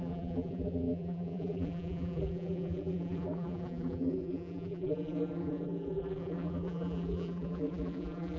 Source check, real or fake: fake